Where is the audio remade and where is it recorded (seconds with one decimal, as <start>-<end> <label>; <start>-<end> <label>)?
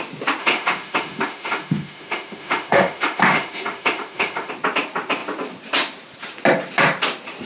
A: 0.0-0.4 recorded; 0.4-4.5 remade; 4.5-7.5 recorded